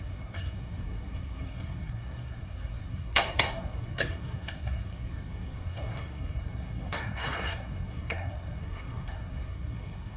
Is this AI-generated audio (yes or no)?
yes